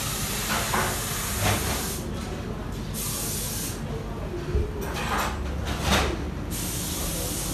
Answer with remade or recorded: recorded